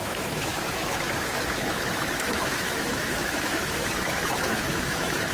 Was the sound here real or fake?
fake